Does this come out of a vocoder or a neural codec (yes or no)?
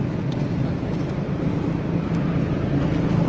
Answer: no